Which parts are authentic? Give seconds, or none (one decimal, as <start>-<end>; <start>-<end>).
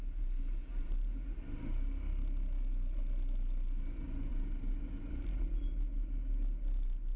0.0-7.2